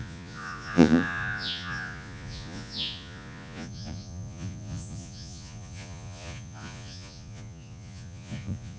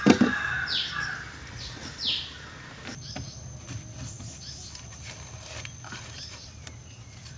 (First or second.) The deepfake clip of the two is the first